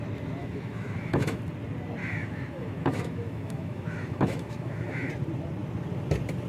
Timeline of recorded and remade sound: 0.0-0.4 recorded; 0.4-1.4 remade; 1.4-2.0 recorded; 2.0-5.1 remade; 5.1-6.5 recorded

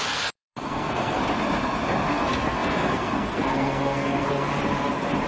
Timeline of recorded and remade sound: 0.0-1.2 remade; 1.2-2.1 recorded; 2.1-4.5 remade; 4.5-5.3 recorded

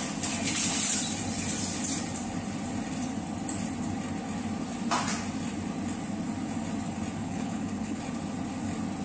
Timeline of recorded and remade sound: 0.0-7.2 recorded; 7.2-8.0 remade; 8.0-9.0 recorded

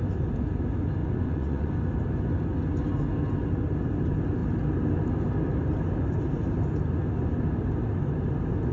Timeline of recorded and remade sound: 0.0-1.0 recorded; 1.0-1.7 remade; 1.7-8.7 recorded

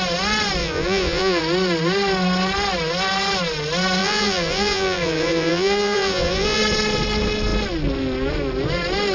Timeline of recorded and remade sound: 0.0-0.6 recorded; 0.6-1.4 remade; 1.4-4.0 recorded; 4.0-6.6 remade; 6.6-9.1 recorded